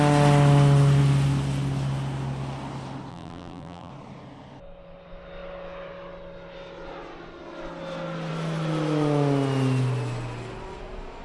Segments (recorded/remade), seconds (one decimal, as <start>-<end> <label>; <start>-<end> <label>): 0.0-3.1 recorded; 3.1-3.9 remade; 3.9-11.2 recorded